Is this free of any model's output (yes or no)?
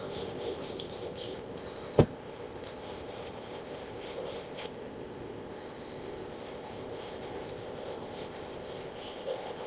no